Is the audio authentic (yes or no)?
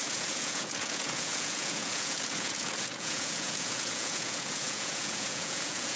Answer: no